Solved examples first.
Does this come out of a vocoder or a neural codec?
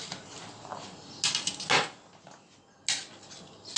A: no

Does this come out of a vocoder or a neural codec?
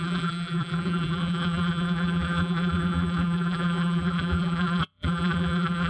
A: yes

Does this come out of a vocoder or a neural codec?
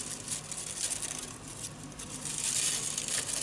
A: no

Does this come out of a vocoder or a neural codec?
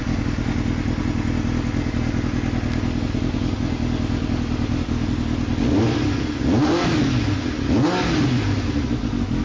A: no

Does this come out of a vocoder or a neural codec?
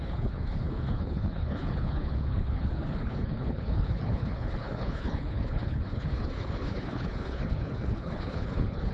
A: yes